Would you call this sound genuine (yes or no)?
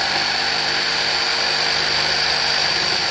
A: no